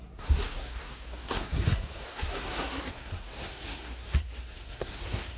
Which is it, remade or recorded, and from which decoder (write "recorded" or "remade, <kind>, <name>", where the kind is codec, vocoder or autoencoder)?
remade, codec, SNAC